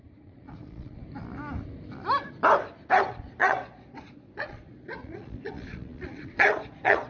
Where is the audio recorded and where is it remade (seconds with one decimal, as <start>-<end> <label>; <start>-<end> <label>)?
0.0-1.0 remade; 1.0-3.1 recorded; 3.1-7.1 remade